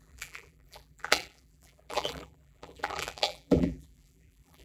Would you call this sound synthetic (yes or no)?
yes